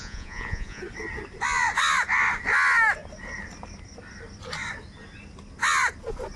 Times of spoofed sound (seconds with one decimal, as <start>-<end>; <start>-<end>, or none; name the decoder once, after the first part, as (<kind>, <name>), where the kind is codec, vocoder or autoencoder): 0.0-0.8 (vocoder, Vocos)